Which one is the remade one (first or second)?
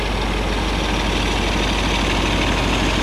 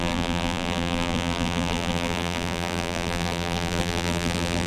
second